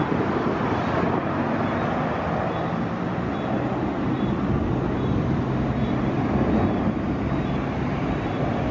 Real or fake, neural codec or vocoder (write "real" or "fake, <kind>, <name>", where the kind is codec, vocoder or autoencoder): real